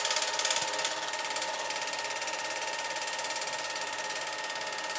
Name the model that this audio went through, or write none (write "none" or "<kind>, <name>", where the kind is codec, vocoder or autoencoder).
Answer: none